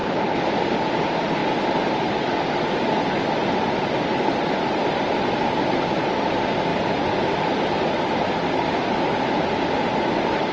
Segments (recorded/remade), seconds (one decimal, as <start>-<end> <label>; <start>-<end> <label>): 0.0-10.5 recorded